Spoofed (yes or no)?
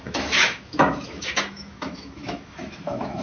yes